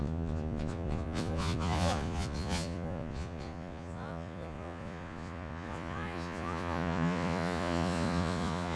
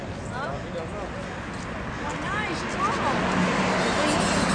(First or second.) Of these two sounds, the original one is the second